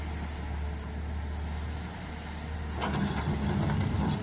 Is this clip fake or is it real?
real